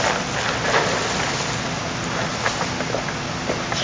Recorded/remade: recorded